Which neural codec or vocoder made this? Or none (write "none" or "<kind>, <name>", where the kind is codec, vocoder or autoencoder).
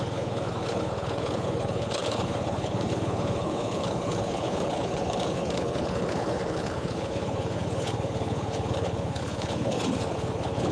codec, HILCodec